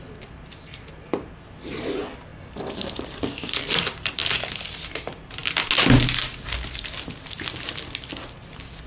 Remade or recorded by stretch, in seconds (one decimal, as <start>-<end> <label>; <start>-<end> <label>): 0.0-2.3 recorded; 2.3-4.3 remade; 4.3-8.9 recorded